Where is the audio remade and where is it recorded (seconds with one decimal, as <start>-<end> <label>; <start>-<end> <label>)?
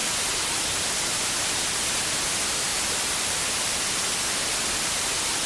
0.0-2.7 recorded; 2.7-3.8 remade; 3.8-5.5 recorded